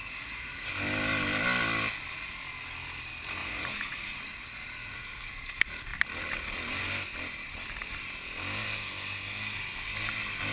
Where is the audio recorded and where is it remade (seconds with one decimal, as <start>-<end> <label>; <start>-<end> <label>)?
0.0-0.7 remade; 0.7-3.4 recorded; 3.4-4.3 remade; 4.3-4.8 recorded; 4.8-5.3 remade; 5.3-10.5 recorded

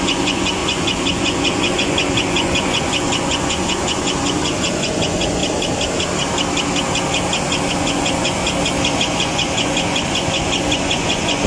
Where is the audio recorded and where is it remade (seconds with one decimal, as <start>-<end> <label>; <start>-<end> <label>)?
0.0-5.4 remade; 5.4-7.7 recorded; 7.7-8.4 remade; 8.4-9.0 recorded; 9.0-11.5 remade